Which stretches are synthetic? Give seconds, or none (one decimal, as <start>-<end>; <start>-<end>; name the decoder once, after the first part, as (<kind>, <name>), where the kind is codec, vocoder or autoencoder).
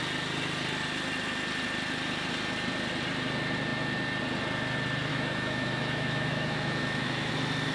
5.1-7.3 (autoencoder, DAC-VAE)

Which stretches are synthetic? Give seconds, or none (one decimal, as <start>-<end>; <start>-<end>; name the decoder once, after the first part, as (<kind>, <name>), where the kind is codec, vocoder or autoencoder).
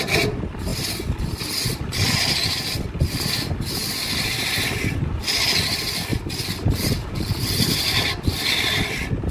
6.1-7.9 (vocoder, BigVGAN v2)